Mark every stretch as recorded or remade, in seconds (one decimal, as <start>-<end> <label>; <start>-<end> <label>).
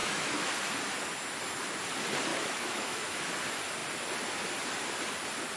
0.0-0.5 remade; 0.5-2.3 recorded; 2.3-3.3 remade; 3.3-5.6 recorded